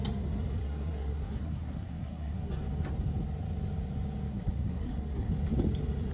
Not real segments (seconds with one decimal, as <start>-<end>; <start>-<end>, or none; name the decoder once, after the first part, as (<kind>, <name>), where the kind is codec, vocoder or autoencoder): 0.6-2.5 (codec, SNAC); 4.3-5.3